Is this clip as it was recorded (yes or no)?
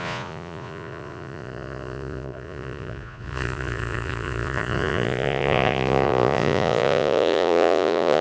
no